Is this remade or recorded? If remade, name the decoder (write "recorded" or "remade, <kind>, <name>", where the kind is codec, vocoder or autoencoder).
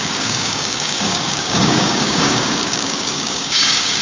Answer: remade, codec, DAC